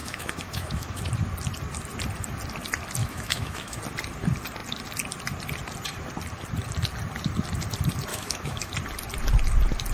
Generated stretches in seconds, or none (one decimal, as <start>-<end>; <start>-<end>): 0.0-1.1; 3.0-3.8; 8.1-8.7